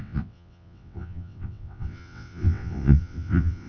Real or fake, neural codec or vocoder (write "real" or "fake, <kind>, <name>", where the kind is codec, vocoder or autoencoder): fake, vocoder, WaveNeXt